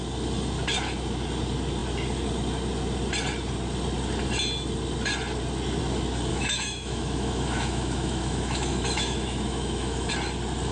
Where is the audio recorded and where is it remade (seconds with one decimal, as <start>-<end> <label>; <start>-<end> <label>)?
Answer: 0.0-6.3 recorded; 6.3-10.1 remade; 10.1-10.7 recorded